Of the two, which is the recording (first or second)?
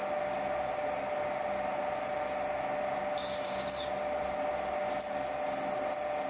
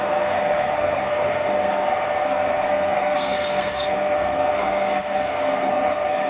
first